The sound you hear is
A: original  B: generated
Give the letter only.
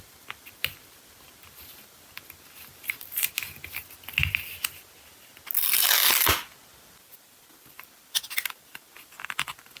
A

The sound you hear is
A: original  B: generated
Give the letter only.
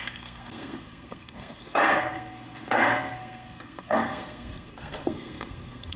B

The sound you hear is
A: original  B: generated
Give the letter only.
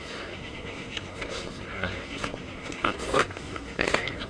B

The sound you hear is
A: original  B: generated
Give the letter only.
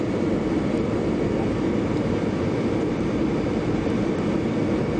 A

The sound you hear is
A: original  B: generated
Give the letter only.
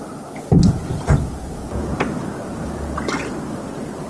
A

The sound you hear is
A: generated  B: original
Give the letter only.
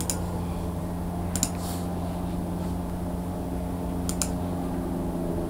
B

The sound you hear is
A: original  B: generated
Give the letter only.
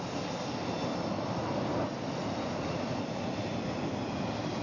A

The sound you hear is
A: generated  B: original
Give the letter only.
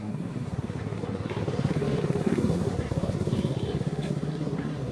A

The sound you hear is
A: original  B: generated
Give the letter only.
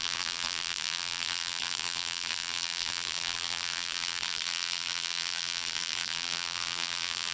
B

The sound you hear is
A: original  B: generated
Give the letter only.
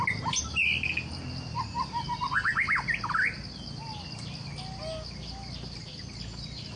A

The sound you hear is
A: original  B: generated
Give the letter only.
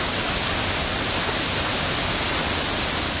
A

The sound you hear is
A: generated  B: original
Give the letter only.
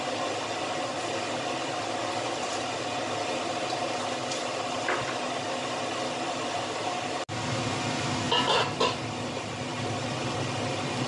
B